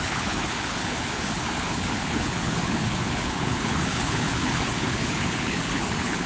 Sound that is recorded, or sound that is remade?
remade